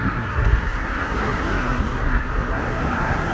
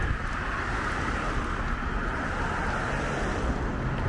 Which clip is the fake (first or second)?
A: first